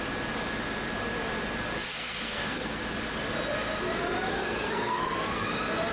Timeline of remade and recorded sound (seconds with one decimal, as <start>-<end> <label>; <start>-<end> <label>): 0.0-1.9 recorded; 1.9-2.8 remade; 2.8-4.3 recorded; 4.3-5.5 remade; 5.5-5.9 recorded